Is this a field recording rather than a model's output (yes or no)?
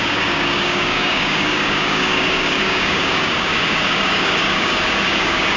no